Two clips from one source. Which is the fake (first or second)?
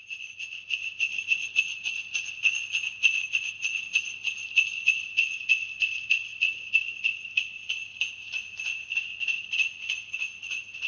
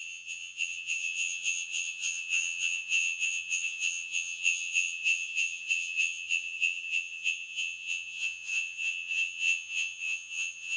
second